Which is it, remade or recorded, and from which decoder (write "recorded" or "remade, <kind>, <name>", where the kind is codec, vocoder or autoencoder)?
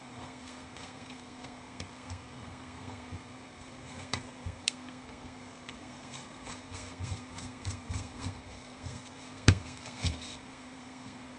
remade, codec, SNAC